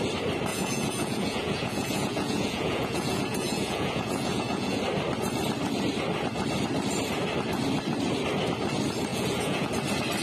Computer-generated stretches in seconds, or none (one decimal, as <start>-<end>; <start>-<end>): 0.5-4.8; 9.1-9.7